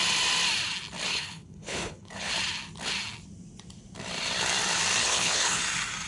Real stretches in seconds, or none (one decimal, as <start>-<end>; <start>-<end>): 0.0-1.1; 2.3-5.0; 5.6-6.1